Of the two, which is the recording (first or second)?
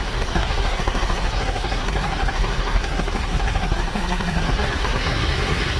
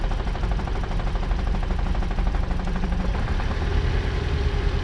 second